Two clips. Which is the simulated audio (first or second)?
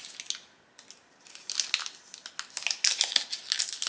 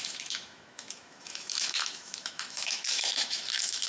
second